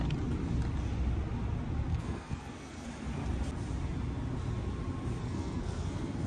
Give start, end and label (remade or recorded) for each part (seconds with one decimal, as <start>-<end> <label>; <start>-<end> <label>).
0.0-1.9 recorded; 1.9-2.9 remade; 2.9-5.2 recorded; 5.2-6.3 remade